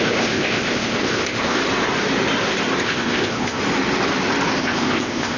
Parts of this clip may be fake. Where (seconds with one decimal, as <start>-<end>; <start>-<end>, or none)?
0.0-1.6; 2.8-3.6; 4.6-5.4

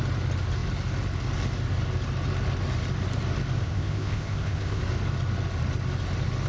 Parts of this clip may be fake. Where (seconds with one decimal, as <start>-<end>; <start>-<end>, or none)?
3.6-4.8